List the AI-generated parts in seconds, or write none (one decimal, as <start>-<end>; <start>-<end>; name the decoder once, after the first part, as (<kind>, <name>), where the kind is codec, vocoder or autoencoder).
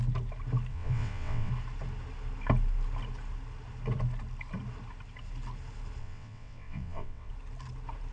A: 0.7-1.5 (vocoder, WaveNeXt); 6.0-7.3